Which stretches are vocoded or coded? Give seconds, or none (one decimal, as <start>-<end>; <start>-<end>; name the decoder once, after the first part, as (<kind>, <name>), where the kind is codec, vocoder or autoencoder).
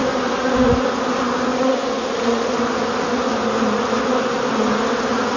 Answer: none